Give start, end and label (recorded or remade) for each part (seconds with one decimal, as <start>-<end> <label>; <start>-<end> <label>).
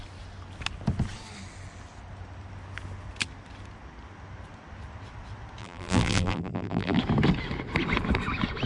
0.0-5.6 recorded; 5.6-7.0 remade; 7.0-8.7 recorded